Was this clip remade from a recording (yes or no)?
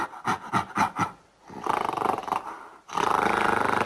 no